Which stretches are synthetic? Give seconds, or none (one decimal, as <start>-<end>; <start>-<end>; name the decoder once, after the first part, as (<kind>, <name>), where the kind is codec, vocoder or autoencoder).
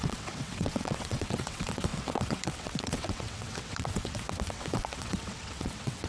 0.0-6.1 (vocoder, WaveNeXt)